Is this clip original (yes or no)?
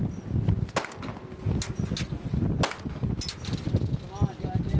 yes